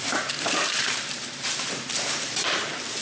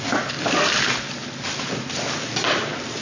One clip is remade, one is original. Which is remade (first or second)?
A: first